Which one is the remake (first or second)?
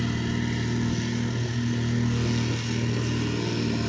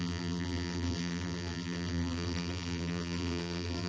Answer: second